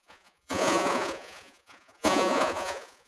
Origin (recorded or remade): remade